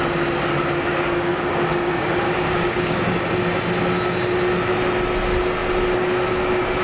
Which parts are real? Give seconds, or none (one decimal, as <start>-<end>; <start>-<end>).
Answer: 0.0-0.9; 3.4-6.8